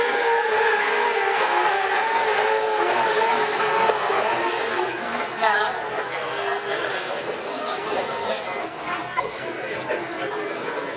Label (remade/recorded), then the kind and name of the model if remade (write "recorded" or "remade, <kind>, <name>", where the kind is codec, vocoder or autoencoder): remade, codec, SNAC